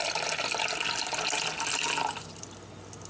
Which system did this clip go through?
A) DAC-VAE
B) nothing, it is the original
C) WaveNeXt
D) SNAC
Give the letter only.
B